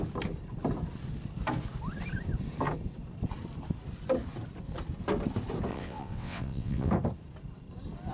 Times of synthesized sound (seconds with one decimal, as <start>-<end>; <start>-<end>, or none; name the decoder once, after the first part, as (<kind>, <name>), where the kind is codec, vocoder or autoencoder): 5.7-6.9 (vocoder, WaveNeXt)